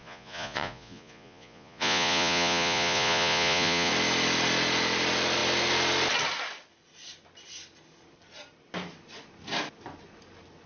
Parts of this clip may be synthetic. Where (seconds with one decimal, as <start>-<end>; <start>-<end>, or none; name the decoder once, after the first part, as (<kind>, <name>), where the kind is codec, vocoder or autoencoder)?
0.0-3.9 (vocoder, Vocos)